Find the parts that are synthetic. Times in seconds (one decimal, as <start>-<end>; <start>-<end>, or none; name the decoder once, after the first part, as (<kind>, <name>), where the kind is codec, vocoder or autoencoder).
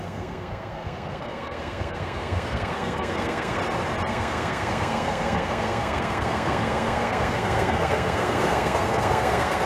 0.0-3.6 (codec, SNAC); 4.1-9.7